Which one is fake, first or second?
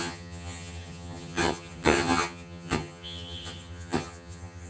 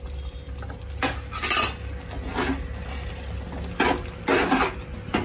first